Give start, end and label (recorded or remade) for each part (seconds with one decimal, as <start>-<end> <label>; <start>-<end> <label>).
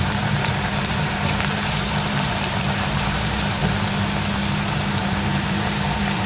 0.0-3.6 remade; 3.6-5.0 recorded; 5.0-6.3 remade